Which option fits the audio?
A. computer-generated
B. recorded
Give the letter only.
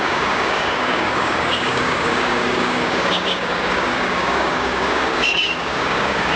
A